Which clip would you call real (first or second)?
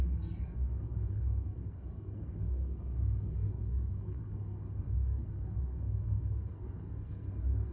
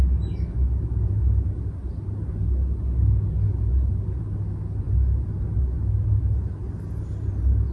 second